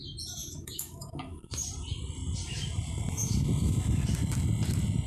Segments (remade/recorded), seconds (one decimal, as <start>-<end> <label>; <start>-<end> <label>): 0.0-0.4 recorded; 0.4-1.5 remade; 1.5-5.1 recorded